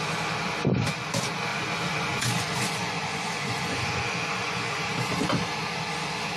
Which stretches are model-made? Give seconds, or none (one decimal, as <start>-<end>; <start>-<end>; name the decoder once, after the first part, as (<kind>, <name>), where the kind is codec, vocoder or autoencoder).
1.5-4.9 (vocoder, Vocos)